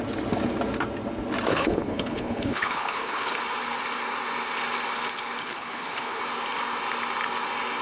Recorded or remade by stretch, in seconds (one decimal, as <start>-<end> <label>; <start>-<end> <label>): 0.0-1.5 recorded; 1.5-3.4 remade; 3.4-5.4 recorded; 5.4-6.2 remade; 6.2-7.8 recorded